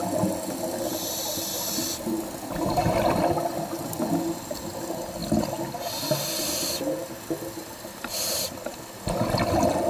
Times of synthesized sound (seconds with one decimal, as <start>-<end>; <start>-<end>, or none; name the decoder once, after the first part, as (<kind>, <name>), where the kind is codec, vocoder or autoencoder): none